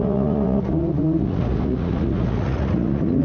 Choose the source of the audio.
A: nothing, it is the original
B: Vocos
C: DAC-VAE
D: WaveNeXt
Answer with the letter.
B